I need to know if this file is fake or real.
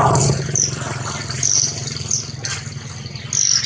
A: real